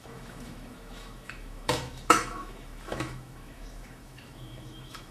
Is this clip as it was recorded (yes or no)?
no